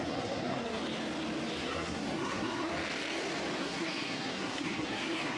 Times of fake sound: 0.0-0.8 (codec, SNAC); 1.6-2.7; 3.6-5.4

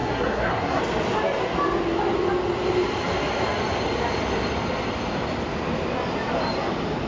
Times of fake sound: 0.0-0.8 (codec, SNAC)

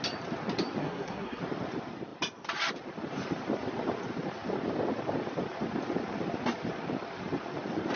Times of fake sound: 0.8-1.4 (codec, SNAC)